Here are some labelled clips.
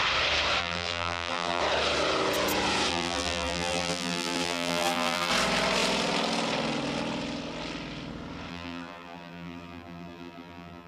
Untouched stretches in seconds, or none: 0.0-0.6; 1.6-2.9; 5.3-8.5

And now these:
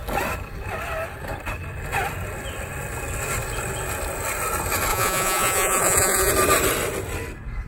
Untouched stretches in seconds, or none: 0.0-4.9; 6.3-7.7